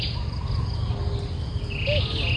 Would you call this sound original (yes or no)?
yes